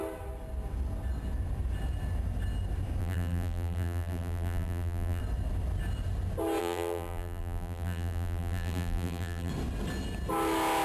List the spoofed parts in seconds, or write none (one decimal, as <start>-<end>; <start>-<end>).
3.0-5.2; 6.6-9.5